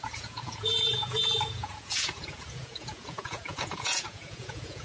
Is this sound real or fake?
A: fake